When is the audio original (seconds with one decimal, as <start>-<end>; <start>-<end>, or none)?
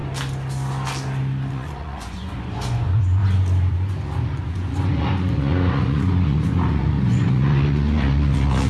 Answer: 0.0-1.5; 3.2-3.7